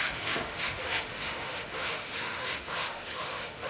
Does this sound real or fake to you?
fake